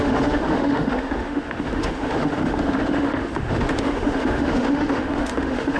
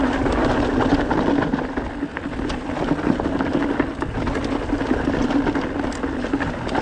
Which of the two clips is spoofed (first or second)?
first